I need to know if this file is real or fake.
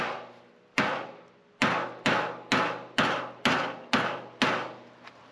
real